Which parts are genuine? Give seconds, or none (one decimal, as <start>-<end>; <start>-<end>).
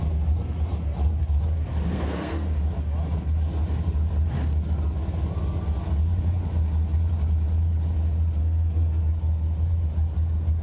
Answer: 0.0-1.9; 2.5-8.4; 9.0-10.6